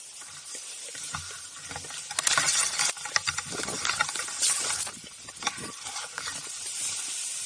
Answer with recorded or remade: recorded